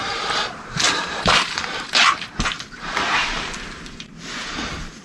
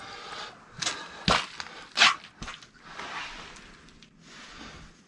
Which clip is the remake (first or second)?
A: first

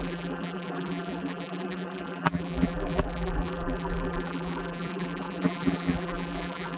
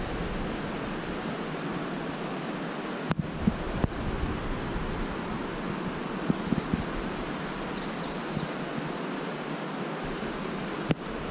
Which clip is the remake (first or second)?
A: first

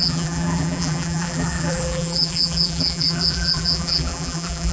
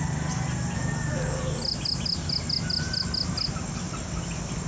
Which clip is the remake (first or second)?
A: first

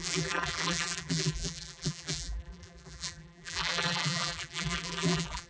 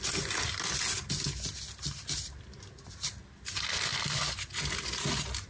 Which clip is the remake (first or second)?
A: first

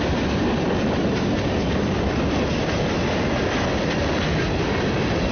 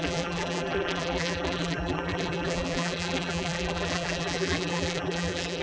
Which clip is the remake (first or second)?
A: second